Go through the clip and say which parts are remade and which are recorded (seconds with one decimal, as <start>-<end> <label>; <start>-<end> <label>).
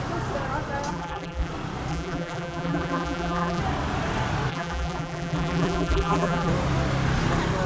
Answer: 0.0-0.9 recorded; 0.9-1.5 remade; 1.5-1.9 recorded; 1.9-3.6 remade; 3.6-4.5 recorded; 4.5-6.5 remade; 6.5-7.7 recorded